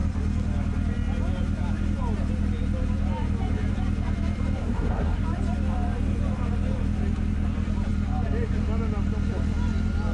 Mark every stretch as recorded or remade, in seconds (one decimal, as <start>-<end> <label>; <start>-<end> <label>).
0.0-4.6 recorded; 4.6-5.2 remade; 5.2-10.1 recorded

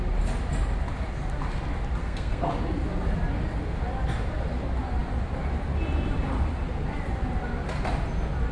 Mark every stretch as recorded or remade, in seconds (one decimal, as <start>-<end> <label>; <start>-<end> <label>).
0.0-2.0 recorded; 2.0-2.5 remade; 2.5-8.5 recorded

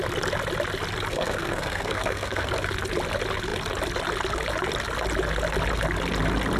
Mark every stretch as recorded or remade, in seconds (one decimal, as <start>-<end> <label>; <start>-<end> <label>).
0.0-1.1 recorded; 1.1-2.5 remade; 2.5-6.6 recorded

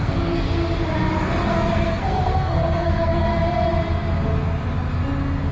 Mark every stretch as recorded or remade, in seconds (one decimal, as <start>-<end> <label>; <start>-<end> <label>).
0.0-0.6 remade; 0.6-1.4 recorded; 1.4-3.3 remade; 3.3-5.5 recorded

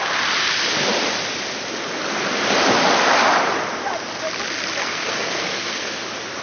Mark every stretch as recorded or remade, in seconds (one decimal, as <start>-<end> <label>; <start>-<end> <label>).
0.0-4.8 recorded; 4.8-5.9 remade; 5.9-6.4 recorded